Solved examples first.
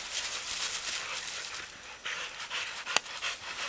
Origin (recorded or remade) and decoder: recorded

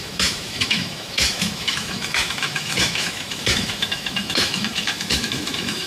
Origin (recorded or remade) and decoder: remade, autoencoder, DAC-VAE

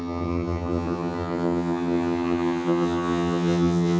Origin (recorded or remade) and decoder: remade, vocoder, HiFi-GAN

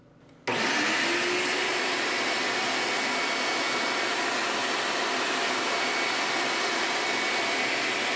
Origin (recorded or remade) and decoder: recorded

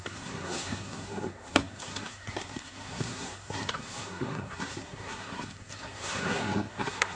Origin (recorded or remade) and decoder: remade, codec, SNAC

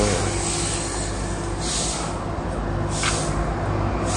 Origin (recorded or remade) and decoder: recorded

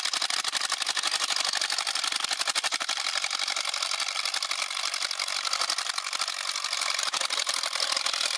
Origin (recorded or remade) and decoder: recorded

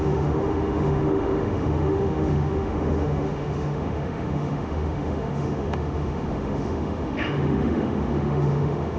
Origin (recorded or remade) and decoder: remade, autoencoder, DAC-VAE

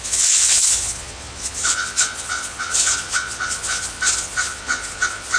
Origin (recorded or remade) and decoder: remade, vocoder, Vocos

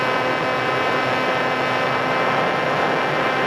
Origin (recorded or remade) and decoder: recorded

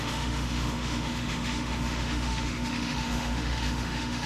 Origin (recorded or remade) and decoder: remade, autoencoder, DAC-VAE